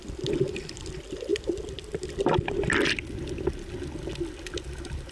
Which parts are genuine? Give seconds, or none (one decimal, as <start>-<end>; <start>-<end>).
0.0-5.1